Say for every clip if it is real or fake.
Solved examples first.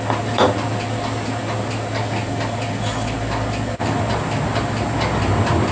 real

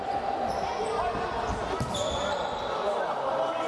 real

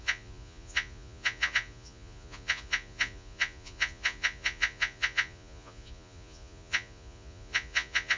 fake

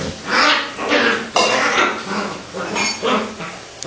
real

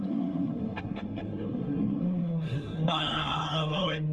fake